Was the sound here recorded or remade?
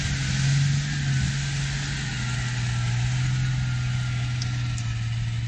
recorded